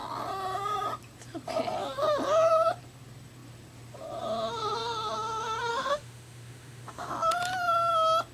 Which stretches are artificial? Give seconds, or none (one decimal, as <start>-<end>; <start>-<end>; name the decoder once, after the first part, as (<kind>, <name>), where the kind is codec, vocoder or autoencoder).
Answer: 5.7-7.1 (autoencoder, DAC-VAE)